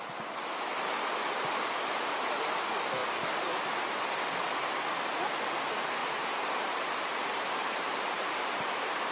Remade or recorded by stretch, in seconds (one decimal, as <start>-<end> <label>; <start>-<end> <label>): 0.0-3.0 recorded; 3.0-4.1 remade; 4.1-6.0 recorded; 6.0-9.1 remade